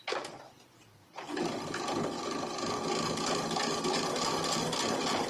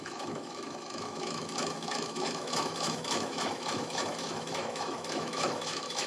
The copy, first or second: second